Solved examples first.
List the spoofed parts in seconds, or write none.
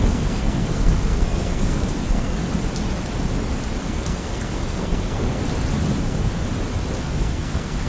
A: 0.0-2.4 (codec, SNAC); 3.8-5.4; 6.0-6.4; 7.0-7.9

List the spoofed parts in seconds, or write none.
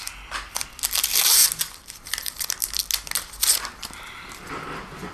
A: none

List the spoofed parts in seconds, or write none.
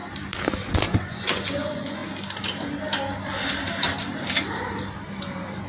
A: 0.7-2.0 (vocoder, Vocos)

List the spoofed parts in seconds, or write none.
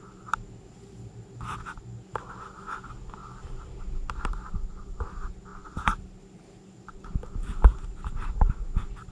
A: none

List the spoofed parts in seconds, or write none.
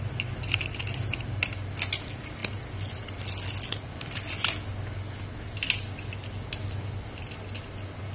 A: none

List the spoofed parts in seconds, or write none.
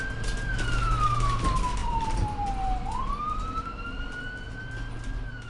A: 1.8-4.5 (vocoder, BigVGAN v2)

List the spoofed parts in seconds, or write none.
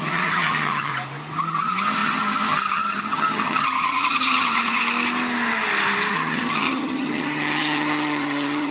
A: 0.0-0.9 (vocoder, HiFi-GAN); 1.5-4.8; 6.1-8.7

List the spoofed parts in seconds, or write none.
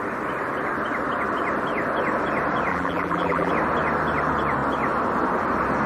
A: 2.7-3.5 (vocoder, BigVGAN v2)